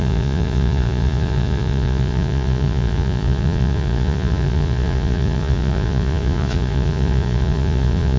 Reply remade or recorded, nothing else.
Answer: remade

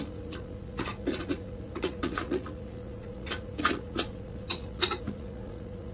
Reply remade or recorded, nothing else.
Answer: remade